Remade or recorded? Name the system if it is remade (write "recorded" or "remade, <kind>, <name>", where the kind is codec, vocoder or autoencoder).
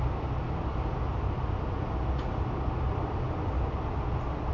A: recorded